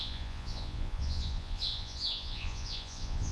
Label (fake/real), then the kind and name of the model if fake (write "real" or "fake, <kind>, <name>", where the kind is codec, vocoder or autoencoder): fake, vocoder, Vocos